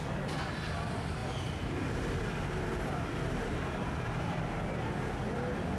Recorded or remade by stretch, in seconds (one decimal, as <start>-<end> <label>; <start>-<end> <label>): 0.0-1.2 recorded; 1.2-4.7 remade; 4.7-5.8 recorded